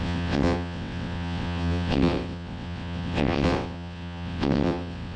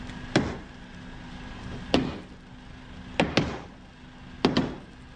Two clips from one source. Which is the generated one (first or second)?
first